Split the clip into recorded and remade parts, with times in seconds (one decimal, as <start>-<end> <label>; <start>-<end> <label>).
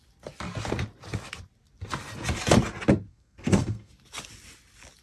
0.0-3.1 recorded; 3.1-3.9 remade; 3.9-5.0 recorded